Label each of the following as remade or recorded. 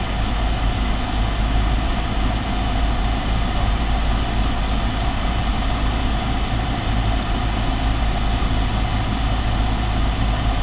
recorded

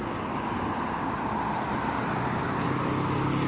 recorded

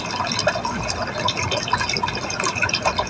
recorded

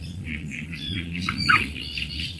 remade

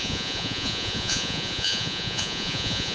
remade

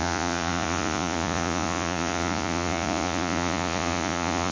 remade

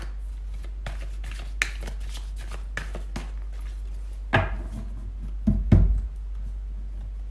recorded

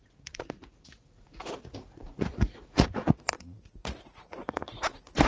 remade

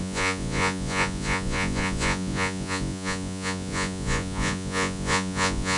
remade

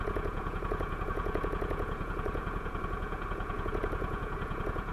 remade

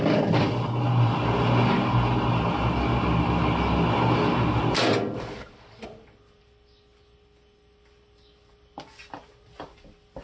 recorded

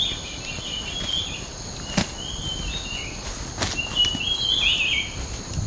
recorded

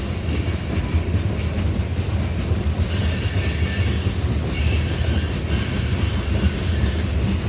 recorded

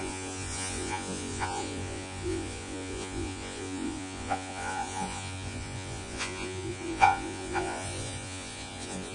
remade